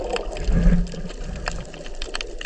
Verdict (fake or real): real